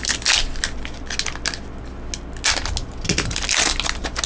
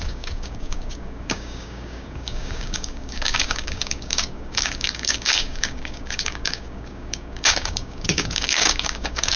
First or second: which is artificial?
second